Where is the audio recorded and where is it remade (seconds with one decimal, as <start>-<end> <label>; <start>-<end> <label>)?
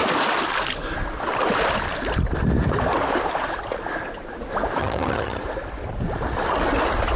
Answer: 0.0-4.8 recorded; 4.8-5.4 remade; 5.4-7.2 recorded